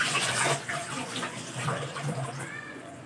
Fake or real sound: fake